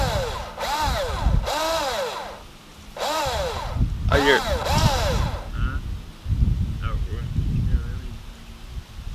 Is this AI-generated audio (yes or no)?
no